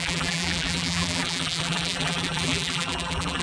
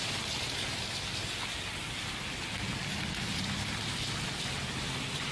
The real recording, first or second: second